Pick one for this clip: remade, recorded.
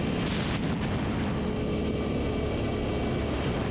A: recorded